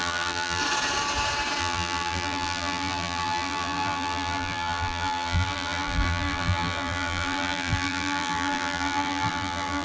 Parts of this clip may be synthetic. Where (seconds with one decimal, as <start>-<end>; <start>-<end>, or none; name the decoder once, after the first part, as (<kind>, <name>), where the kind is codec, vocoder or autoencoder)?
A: 0.0-0.6 (vocoder, BigVGAN v2); 1.6-9.8